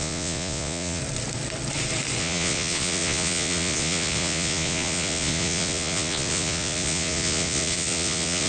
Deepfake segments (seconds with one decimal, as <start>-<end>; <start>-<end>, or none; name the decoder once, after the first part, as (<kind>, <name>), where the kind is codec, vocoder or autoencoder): 0.0-1.0 (vocoder, Vocos); 2.2-8.5